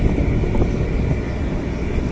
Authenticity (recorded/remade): recorded